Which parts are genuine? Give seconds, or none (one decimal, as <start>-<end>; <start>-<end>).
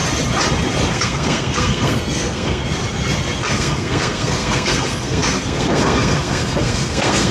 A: 0.0-0.9; 2.6-3.4